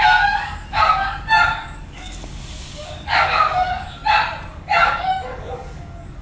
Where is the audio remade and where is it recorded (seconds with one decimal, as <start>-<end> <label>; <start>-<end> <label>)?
0.0-4.0 remade; 4.0-4.5 recorded; 4.5-6.2 remade